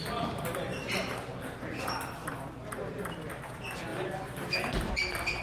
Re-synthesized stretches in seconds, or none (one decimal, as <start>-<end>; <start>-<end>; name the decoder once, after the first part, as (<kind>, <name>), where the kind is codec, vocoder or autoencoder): 3.9-4.9 (vocoder, BigVGAN v2)